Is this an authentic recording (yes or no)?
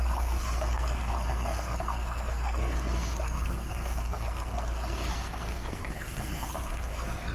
no